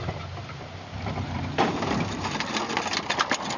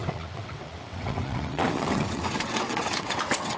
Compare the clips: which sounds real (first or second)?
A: first